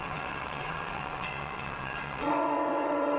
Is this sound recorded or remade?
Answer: remade